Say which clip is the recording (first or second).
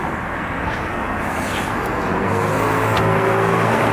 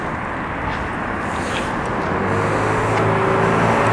second